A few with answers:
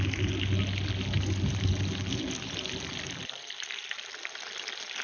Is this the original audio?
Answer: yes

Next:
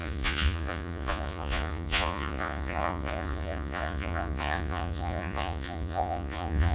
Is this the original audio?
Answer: no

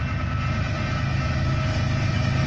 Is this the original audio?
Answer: yes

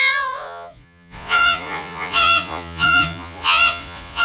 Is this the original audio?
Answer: no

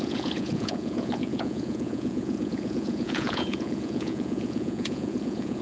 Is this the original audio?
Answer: no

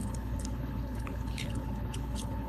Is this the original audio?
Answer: no